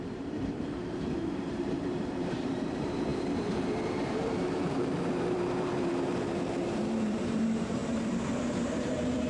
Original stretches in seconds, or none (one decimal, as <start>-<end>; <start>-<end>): none